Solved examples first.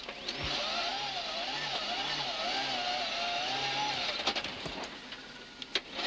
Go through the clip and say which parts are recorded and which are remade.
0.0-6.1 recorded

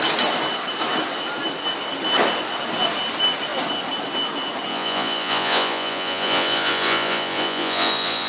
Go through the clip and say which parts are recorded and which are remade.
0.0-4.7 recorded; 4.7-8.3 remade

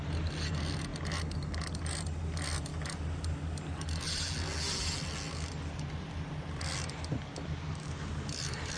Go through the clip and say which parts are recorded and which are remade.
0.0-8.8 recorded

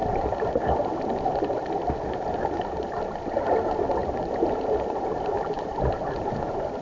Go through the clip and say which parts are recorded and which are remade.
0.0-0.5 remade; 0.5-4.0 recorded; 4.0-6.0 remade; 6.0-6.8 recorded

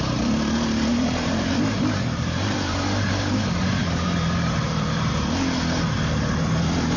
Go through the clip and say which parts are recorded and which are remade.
0.0-0.9 recorded; 0.9-5.1 remade; 5.1-7.0 recorded

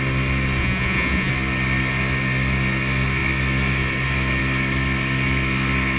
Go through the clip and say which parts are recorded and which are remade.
0.0-0.6 recorded; 0.6-1.3 remade; 1.3-6.0 recorded

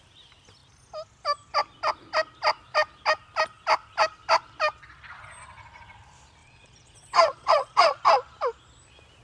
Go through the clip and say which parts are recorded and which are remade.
0.0-6.4 recorded; 6.4-8.0 remade; 8.0-9.2 recorded

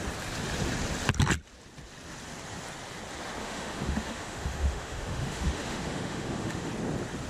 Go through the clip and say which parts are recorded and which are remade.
0.0-3.4 recorded; 3.4-6.7 remade; 6.7-7.3 recorded